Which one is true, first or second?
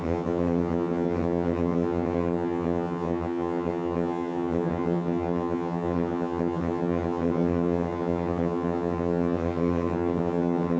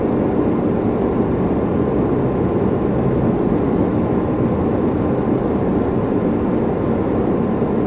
second